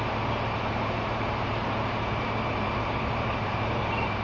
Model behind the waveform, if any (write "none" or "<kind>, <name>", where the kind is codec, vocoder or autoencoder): vocoder, BigVGAN v2